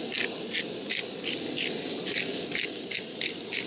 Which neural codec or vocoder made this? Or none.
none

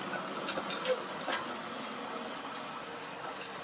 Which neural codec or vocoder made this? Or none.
none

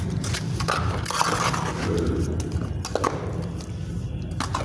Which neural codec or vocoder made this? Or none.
none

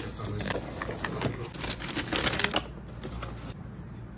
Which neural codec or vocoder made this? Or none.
none